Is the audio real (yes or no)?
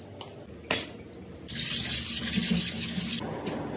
yes